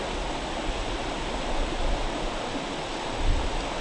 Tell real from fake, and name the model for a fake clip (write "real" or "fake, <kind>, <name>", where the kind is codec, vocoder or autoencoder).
real